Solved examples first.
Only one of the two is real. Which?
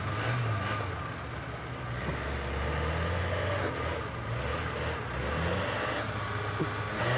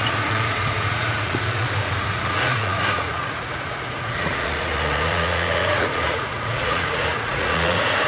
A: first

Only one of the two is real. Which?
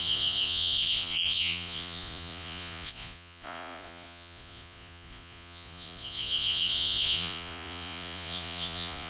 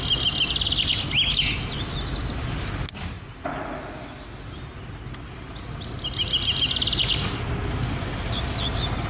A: second